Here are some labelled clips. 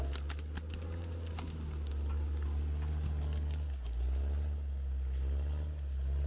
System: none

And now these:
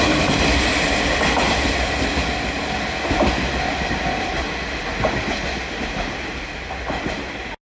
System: none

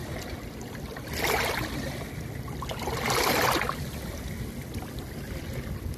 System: none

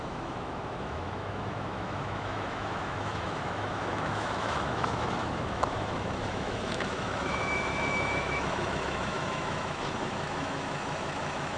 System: autoencoder, DAC-VAE